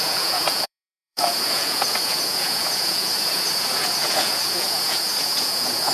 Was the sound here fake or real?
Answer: fake